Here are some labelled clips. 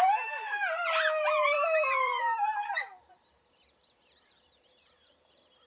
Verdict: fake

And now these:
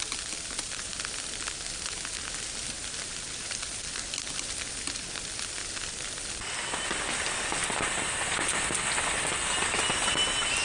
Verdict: real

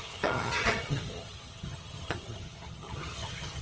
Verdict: fake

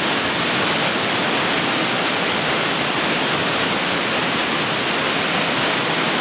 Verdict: real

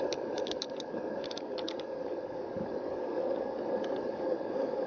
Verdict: fake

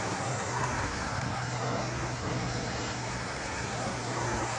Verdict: fake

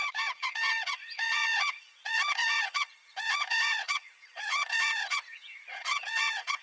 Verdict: fake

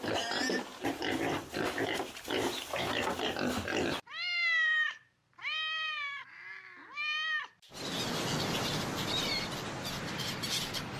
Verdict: real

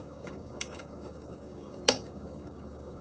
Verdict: fake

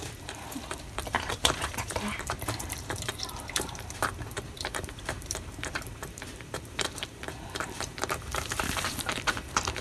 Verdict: fake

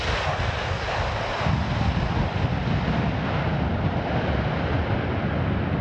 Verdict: real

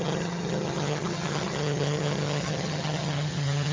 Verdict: fake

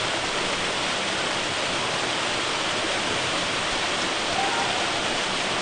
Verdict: real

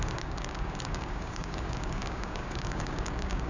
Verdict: fake